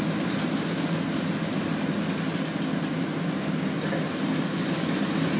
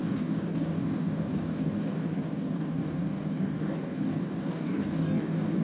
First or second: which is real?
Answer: first